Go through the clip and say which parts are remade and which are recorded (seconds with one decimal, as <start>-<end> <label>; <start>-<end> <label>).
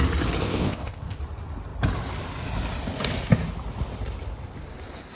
0.0-0.4 recorded; 0.4-1.2 remade; 1.2-5.2 recorded